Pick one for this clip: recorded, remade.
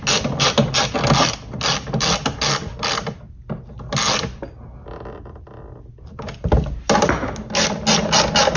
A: recorded